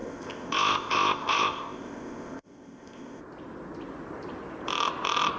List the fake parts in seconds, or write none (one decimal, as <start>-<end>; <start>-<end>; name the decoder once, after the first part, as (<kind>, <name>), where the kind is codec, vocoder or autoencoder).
0.0-3.2 (codec, ZipCodec)